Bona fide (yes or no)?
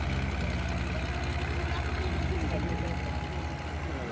yes